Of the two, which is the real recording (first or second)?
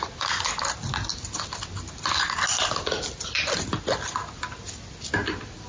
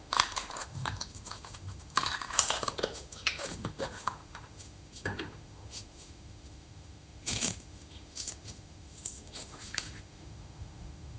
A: first